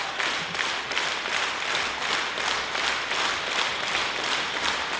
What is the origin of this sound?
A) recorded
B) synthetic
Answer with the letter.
A